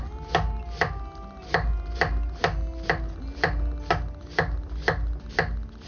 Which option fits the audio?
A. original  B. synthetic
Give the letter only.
A